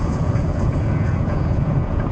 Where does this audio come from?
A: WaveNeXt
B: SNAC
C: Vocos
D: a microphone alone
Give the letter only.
C